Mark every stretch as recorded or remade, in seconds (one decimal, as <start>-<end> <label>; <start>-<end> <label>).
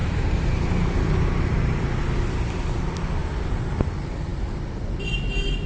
0.0-1.1 remade; 1.1-5.7 recorded